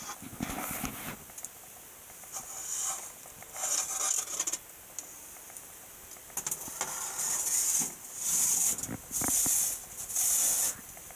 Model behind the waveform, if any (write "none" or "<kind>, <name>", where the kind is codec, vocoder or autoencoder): none